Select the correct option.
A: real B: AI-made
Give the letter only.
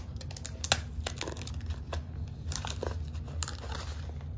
A